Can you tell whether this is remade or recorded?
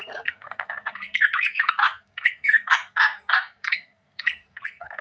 remade